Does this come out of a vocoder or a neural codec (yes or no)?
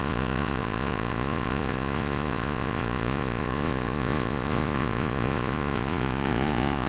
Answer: yes